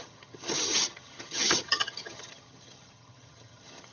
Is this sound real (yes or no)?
no